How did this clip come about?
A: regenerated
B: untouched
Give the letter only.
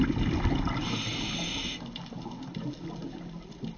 B